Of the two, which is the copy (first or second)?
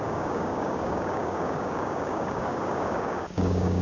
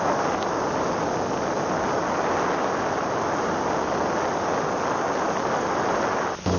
first